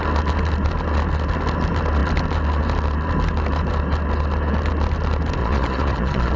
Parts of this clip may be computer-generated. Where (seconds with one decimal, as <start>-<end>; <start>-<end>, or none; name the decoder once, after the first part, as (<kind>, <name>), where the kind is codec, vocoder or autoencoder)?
5.4-6.4 (vocoder, Vocos)